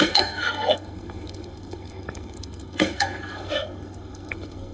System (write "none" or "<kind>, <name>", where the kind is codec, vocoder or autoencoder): codec, SNAC